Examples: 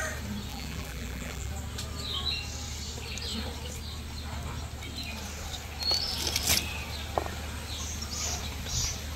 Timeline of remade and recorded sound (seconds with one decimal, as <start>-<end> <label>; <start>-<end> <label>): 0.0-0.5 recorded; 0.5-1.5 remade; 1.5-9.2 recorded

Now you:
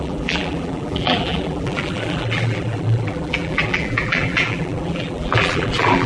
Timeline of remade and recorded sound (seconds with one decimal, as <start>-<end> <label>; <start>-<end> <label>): 0.0-6.1 remade

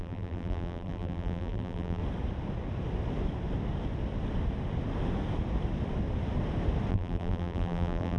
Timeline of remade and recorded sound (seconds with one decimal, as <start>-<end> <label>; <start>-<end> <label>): 0.0-2.0 remade; 2.0-6.9 recorded; 6.9-8.2 remade